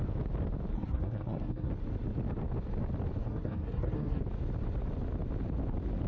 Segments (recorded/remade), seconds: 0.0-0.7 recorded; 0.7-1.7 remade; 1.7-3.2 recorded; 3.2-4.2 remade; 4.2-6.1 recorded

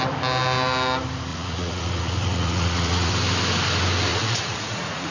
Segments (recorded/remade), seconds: 0.0-1.3 recorded; 1.3-3.1 remade; 3.1-4.1 recorded; 4.1-5.1 remade

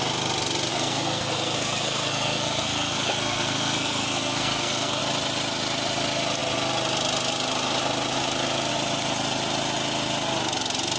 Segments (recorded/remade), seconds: 0.0-0.7 recorded; 0.7-5.0 remade; 5.0-11.0 recorded

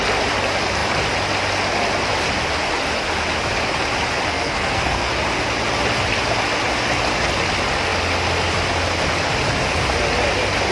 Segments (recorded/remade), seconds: 0.0-4.3 recorded; 4.3-5.1 remade; 5.1-10.7 recorded

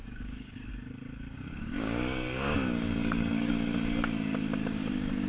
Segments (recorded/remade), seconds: 0.0-0.7 remade; 0.7-1.3 recorded; 1.3-3.5 remade; 3.5-4.6 recorded; 4.6-5.3 remade

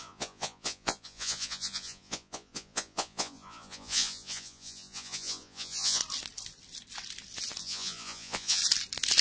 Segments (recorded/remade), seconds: 0.0-6.0 remade; 6.0-7.6 recorded; 7.6-8.6 remade; 8.6-9.2 recorded

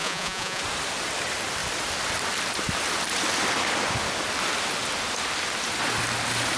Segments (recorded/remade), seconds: 0.0-0.6 remade; 0.6-6.6 recorded